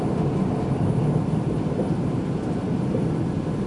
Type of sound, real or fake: real